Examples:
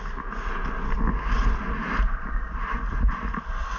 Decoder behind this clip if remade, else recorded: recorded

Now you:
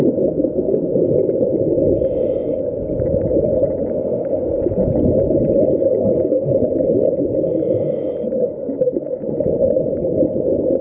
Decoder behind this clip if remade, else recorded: recorded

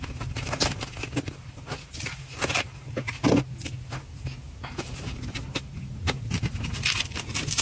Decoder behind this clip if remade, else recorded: recorded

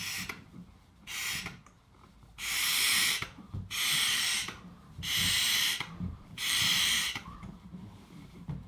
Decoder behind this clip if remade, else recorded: remade, vocoder, BigVGAN v2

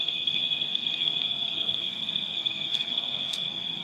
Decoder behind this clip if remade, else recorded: remade, codec, SNAC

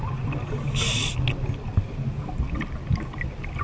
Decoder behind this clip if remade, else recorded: recorded